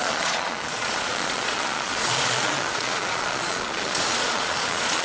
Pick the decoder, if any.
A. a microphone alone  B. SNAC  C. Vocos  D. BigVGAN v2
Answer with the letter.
C